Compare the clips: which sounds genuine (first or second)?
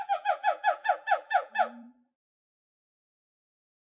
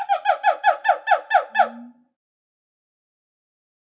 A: second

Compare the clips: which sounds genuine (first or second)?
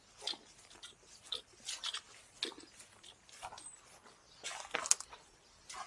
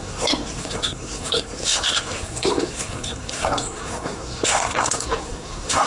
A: first